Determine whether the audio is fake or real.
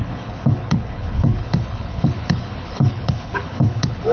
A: fake